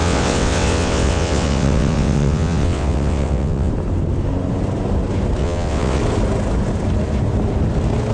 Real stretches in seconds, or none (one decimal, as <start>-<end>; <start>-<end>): 3.7-5.4; 6.0-8.1